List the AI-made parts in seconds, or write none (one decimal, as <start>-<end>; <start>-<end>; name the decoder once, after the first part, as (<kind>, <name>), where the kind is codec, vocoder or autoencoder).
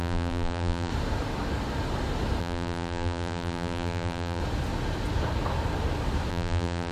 0.0-0.9 (vocoder, BigVGAN v2); 2.4-4.4; 6.3-6.9